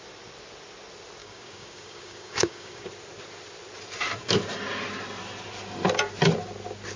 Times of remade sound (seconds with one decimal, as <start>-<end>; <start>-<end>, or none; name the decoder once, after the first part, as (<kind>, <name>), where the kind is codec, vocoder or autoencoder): 1.2-2.9 (codec, DAC)